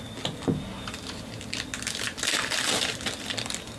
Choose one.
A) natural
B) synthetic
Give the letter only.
A